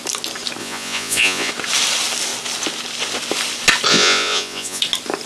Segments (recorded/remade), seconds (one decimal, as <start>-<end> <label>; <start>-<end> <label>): 0.0-0.6 recorded; 0.6-1.5 remade; 1.5-3.9 recorded; 3.9-4.8 remade; 4.8-5.3 recorded

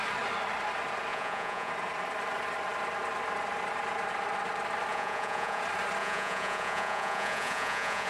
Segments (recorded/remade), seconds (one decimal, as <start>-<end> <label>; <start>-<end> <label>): 0.0-1.1 recorded; 1.1-1.7 remade; 1.7-4.9 recorded; 4.9-5.6 remade; 5.6-6.0 recorded; 6.0-8.1 remade

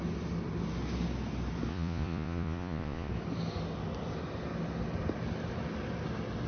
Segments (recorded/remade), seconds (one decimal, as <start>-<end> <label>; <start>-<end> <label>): 0.0-1.7 recorded; 1.7-3.1 remade; 3.1-6.5 recorded

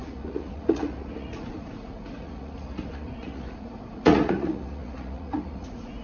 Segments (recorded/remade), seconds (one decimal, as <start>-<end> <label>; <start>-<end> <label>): 0.0-6.0 remade

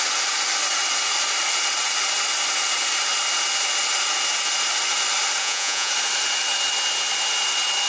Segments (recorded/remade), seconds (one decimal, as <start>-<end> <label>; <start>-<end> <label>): 0.0-5.4 recorded; 5.4-5.9 remade; 5.9-7.9 recorded